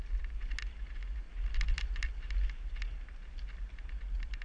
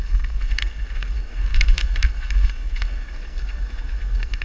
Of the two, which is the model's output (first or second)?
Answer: second